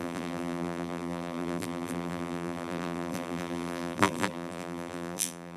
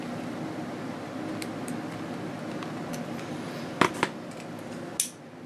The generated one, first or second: first